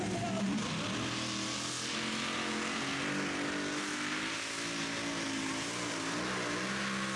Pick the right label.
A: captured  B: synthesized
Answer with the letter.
A